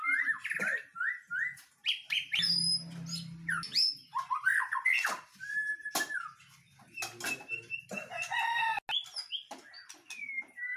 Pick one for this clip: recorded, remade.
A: recorded